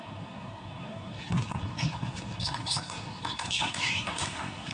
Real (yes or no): no